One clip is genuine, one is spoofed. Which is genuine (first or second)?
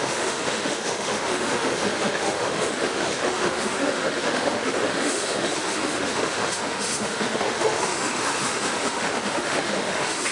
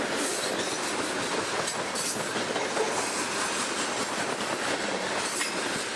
second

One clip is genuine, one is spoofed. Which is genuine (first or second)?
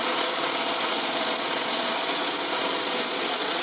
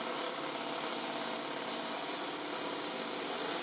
second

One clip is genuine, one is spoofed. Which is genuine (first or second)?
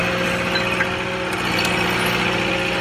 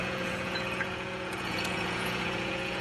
first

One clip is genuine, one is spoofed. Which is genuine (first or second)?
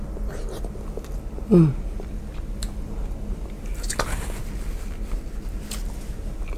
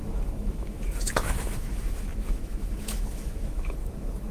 first